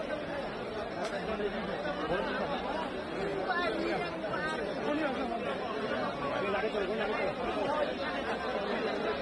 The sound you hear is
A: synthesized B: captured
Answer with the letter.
B